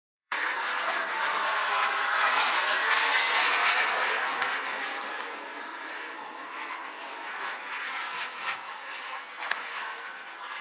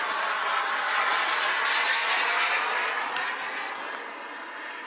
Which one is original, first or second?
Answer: second